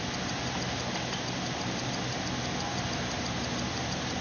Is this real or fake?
fake